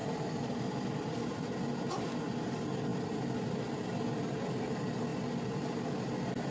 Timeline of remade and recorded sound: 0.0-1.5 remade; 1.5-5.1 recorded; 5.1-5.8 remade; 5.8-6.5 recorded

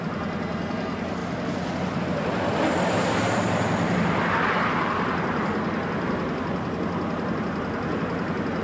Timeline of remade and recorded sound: 0.0-8.6 recorded

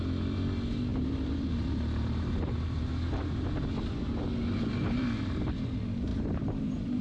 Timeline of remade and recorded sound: 0.0-0.9 recorded; 0.9-2.9 remade; 2.9-6.1 recorded; 6.1-7.0 remade